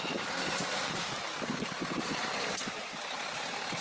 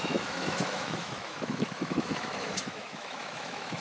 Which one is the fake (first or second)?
second